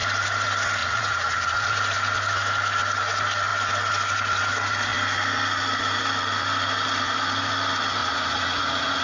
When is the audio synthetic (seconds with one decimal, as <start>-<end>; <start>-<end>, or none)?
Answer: 0.8-1.7; 8.0-9.0